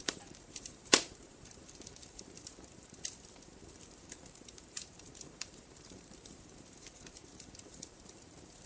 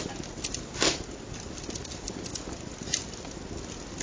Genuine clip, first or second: second